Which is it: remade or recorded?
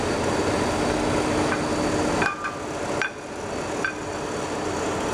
recorded